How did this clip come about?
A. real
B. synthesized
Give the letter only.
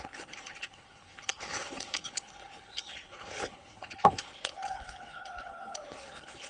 B